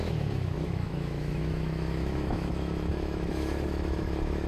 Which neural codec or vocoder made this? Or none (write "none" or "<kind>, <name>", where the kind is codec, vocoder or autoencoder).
autoencoder, DAC-VAE